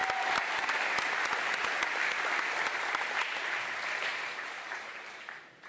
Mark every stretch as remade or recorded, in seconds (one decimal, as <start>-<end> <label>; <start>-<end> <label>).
0.0-4.1 recorded; 4.1-5.7 remade